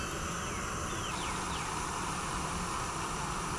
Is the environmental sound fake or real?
real